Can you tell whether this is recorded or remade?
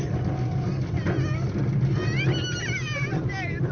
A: recorded